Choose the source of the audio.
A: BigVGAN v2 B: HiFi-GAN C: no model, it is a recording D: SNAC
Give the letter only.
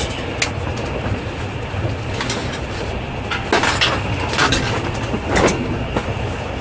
C